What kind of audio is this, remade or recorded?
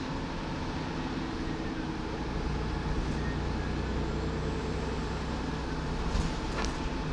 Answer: recorded